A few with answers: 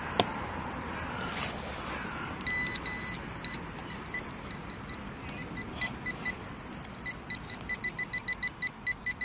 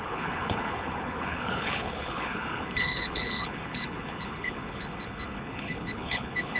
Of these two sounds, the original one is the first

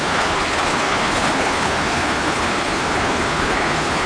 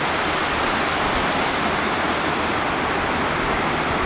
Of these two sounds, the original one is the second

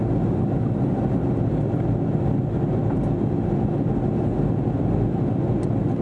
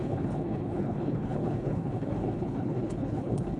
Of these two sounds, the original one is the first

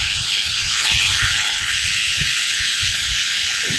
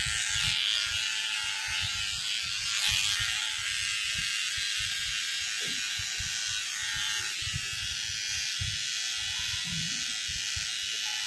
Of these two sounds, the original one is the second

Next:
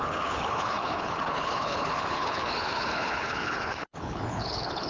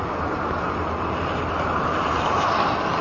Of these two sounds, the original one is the second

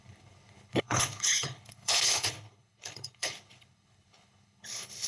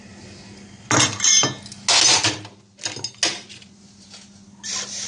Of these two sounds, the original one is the second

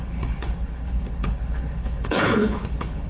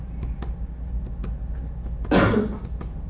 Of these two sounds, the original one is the second